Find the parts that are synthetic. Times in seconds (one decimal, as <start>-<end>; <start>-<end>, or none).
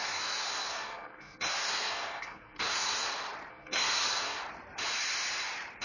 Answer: 0.0-3.1; 3.5-4.4